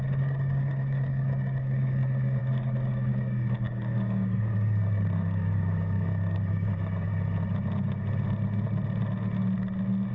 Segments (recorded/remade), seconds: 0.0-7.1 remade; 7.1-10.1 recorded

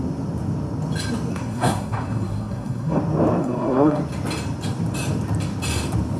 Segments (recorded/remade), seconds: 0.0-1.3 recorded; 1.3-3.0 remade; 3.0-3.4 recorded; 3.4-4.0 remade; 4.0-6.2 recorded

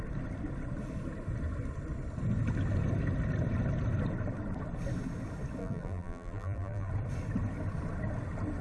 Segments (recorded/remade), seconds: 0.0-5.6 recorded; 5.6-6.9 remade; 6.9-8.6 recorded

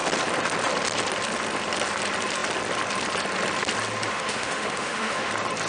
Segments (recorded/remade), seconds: 0.0-4.1 recorded; 4.1-5.3 remade; 5.3-5.7 recorded